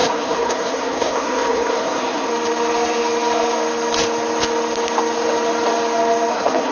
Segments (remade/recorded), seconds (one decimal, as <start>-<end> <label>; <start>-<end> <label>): 0.0-2.3 remade; 2.3-6.3 recorded; 6.3-6.7 remade